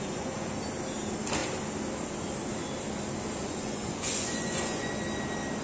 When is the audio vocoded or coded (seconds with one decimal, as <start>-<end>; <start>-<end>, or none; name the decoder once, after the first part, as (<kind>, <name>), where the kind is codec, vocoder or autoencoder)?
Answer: 0.0-0.5 (vocoder, Vocos); 3.4-4.9